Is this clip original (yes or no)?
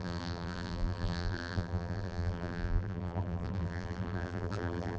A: no